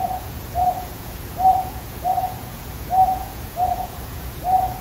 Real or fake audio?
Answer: fake